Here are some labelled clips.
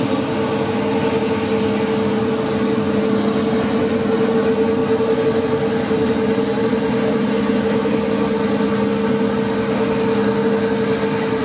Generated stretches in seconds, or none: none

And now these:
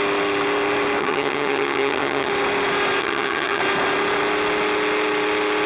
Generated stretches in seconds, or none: 1.0-2.3; 3.0-3.6

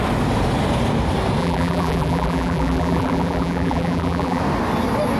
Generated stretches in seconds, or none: 1.4-4.4

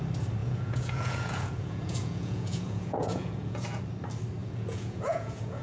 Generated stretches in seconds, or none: 0.4-3.8; 4.4-5.6

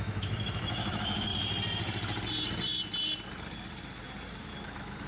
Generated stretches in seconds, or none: 0.0-1.3; 4.4-5.1

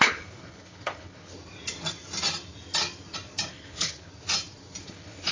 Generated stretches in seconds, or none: 0.0-1.3; 3.5-4.1; 4.8-5.3

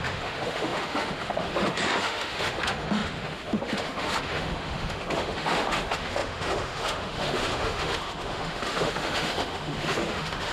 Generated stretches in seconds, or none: 0.0-10.5

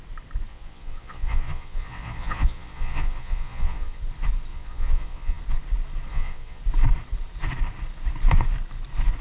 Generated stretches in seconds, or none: 0.5-4.0; 4.5-5.4; 6.1-6.6